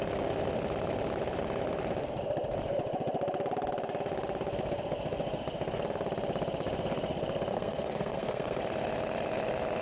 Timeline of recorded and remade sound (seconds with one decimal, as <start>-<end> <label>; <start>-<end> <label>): 0.0-7.5 recorded; 7.5-8.6 remade; 8.6-9.8 recorded